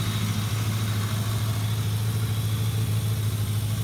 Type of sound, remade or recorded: recorded